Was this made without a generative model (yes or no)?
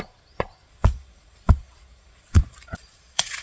no